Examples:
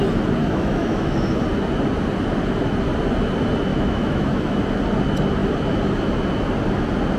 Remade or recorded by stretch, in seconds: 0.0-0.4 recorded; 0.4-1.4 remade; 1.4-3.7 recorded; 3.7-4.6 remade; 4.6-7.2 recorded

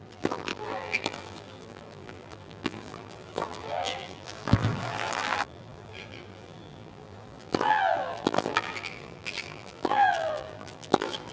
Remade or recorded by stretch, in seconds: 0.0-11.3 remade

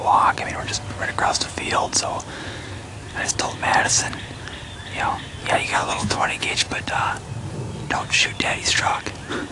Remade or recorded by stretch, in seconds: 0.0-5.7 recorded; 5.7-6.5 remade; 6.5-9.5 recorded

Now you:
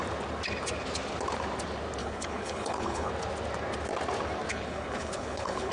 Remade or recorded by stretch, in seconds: 0.0-2.0 recorded; 2.0-3.1 remade; 3.1-4.5 recorded; 4.5-5.7 remade

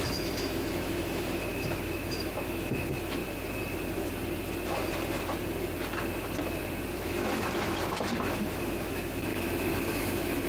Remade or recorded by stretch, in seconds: 0.0-3.2 remade; 3.2-6.9 recorded; 6.9-10.5 remade

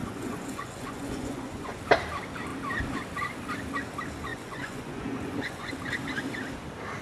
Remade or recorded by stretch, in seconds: 0.0-1.8 remade; 1.8-4.3 recorded; 4.3-5.7 remade; 5.7-7.0 recorded

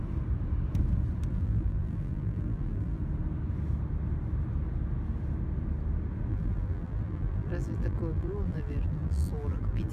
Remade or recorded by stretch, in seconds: 0.0-1.3 recorded; 1.3-3.0 remade; 3.0-6.3 recorded; 6.3-9.9 remade